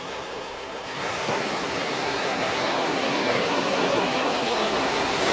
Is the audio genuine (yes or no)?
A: no